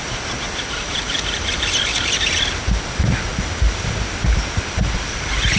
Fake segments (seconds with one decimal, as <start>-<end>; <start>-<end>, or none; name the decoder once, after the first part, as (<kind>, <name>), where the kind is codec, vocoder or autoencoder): none